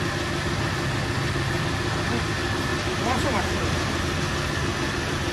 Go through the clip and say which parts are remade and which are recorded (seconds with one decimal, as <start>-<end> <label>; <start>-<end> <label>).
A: 0.0-2.7 recorded; 2.7-4.0 remade; 4.0-5.3 recorded